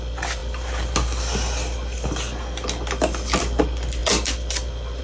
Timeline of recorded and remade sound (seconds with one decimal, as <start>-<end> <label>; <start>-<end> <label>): 0.0-5.0 recorded